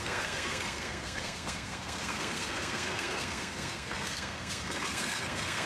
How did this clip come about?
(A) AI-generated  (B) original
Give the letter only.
A